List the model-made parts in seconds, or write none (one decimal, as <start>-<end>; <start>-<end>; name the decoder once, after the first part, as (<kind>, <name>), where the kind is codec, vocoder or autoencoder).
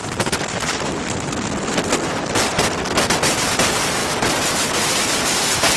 0.0-3.5 (vocoder, BigVGAN v2)